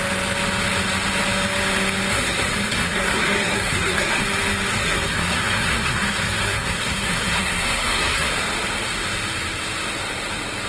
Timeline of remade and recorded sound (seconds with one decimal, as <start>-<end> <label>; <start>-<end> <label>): 0.0-2.1 recorded; 2.1-4.2 remade; 4.2-4.7 recorded; 4.7-8.3 remade; 8.3-10.7 recorded